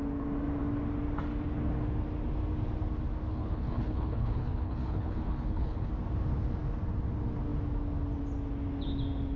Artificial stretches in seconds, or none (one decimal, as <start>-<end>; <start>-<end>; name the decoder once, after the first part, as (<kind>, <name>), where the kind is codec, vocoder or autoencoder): 3.3-5.9 (codec, HILCodec)